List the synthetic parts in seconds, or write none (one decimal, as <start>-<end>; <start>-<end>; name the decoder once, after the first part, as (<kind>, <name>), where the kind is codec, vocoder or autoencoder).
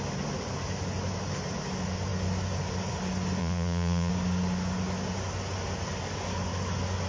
3.4-4.1 (vocoder, Vocos)